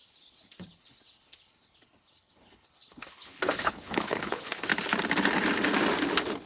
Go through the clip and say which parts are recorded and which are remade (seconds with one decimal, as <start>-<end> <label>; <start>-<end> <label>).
0.0-4.7 remade; 4.7-6.5 recorded